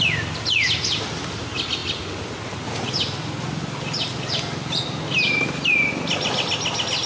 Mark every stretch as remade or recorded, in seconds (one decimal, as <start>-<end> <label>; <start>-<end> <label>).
0.0-7.1 recorded